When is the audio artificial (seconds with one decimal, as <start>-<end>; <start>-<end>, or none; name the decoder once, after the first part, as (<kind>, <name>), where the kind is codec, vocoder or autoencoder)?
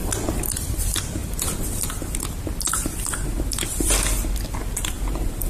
0.5-5.5 (vocoder, BigVGAN v2)